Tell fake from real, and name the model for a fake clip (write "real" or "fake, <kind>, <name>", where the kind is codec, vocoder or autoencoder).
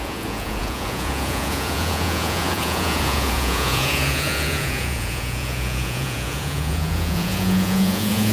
fake, vocoder, Vocos